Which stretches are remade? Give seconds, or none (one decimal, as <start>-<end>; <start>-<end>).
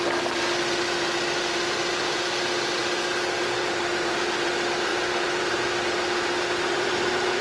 none